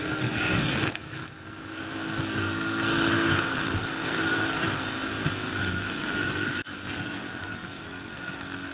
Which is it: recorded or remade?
remade